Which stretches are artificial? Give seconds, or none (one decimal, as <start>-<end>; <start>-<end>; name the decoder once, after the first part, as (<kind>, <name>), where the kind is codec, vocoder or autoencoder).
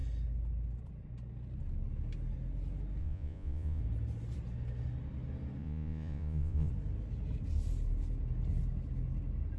3.0-3.8 (vocoder, Vocos); 5.6-6.7